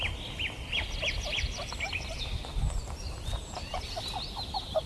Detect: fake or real real